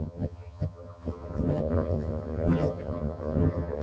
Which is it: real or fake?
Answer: fake